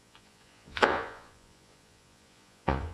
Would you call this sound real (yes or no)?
no